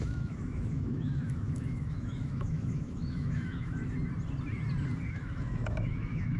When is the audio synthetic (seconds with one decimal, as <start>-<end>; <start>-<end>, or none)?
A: 0.0-3.8; 5.1-6.4